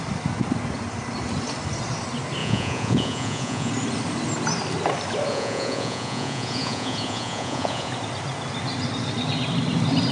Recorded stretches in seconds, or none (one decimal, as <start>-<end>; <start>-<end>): 0.0-2.4; 3.7-5.3; 7.9-10.1